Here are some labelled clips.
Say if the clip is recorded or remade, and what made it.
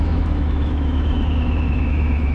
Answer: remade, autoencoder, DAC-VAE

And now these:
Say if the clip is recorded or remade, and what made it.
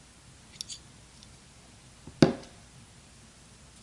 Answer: recorded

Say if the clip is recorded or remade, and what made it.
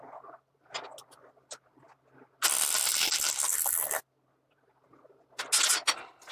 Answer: recorded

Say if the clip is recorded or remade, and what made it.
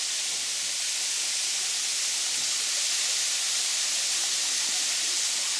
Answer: recorded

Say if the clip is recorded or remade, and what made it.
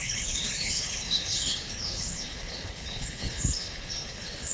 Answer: remade, codec, HILCodec